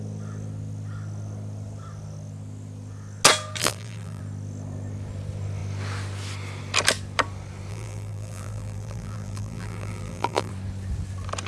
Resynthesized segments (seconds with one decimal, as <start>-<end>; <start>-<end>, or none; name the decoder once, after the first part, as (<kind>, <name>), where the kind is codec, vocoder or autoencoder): 3.6-4.2 (vocoder, BigVGAN v2); 7.7-10.5